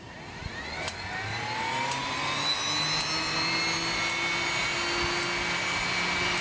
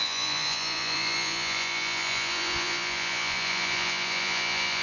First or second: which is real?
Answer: first